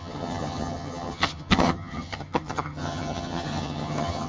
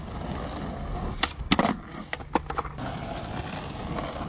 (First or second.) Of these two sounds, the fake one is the first